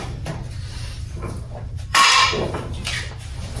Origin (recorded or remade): remade